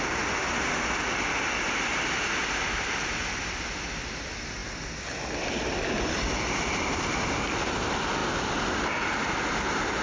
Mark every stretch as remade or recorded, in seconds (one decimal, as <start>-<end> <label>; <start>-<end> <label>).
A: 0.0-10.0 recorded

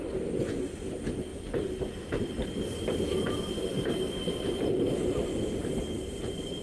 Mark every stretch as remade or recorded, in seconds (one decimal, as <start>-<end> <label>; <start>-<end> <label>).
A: 0.0-6.6 recorded

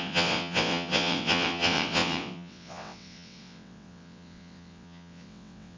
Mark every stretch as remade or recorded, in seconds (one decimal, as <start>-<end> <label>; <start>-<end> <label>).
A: 0.0-5.8 remade

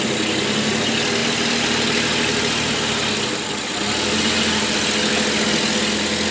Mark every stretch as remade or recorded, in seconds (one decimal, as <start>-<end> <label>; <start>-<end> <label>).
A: 0.0-6.3 recorded

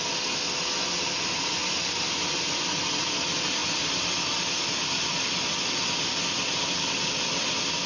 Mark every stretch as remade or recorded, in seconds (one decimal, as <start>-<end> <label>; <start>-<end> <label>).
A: 0.0-7.9 recorded

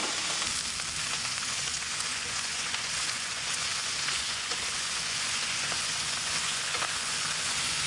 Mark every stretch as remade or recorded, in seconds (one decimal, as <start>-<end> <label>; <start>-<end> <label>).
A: 0.0-1.0 recorded; 1.0-7.9 remade

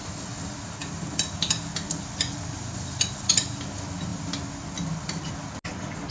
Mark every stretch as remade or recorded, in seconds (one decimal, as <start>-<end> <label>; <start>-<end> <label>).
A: 0.0-6.1 recorded